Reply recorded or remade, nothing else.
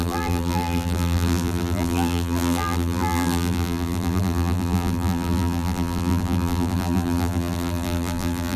remade